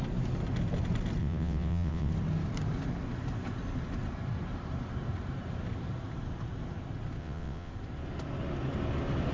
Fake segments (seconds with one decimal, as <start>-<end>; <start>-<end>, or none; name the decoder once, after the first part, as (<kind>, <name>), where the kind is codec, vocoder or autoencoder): 1.2-2.1 (vocoder, WaveNeXt); 7.2-7.7